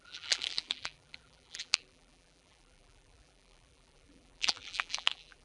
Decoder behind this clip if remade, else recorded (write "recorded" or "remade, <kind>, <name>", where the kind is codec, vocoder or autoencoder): remade, vocoder, BigVGAN v2